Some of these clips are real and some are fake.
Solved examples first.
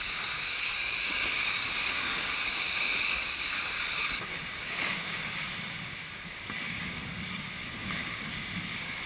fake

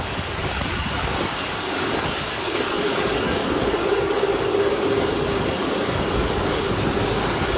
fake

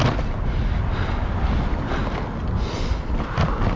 real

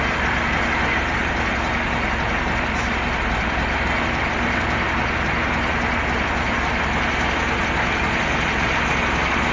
real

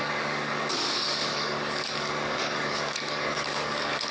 fake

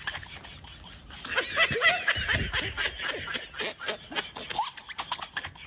real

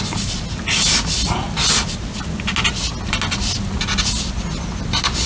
real